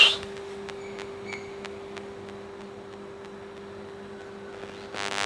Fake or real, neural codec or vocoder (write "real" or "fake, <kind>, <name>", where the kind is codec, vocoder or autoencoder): real